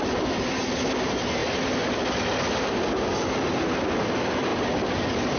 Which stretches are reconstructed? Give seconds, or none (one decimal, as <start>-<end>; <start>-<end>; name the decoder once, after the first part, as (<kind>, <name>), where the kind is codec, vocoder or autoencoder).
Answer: none